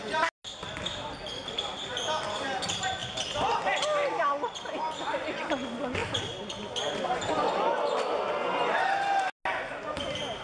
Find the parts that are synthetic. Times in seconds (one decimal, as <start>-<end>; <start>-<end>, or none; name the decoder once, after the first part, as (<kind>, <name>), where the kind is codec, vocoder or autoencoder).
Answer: none